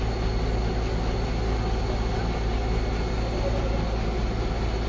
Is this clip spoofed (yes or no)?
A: no